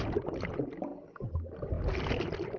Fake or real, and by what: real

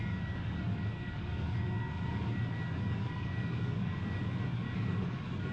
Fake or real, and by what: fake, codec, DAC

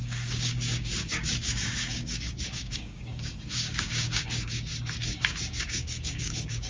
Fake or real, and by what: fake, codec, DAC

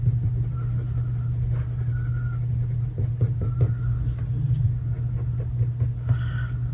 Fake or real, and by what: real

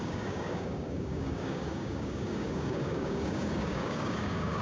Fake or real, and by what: fake, codec, DAC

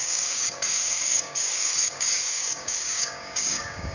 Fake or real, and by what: fake, codec, DAC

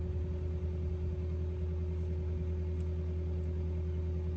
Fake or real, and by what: real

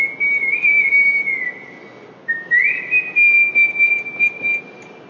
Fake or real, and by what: real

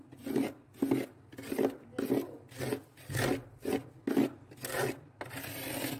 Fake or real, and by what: real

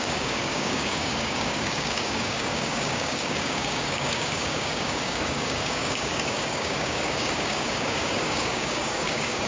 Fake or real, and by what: fake, codec, DAC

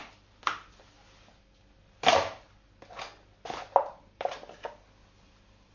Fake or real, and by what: real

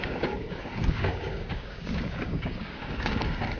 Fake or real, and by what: fake, codec, DAC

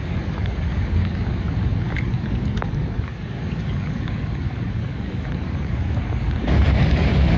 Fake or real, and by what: fake, codec, DAC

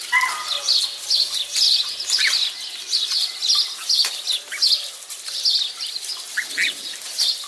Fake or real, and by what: real